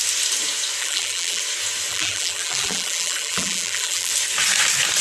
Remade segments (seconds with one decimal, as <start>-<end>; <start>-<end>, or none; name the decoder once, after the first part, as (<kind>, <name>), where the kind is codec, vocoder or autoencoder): 0.8-1.4 (vocoder, BigVGAN v2); 1.9-4.1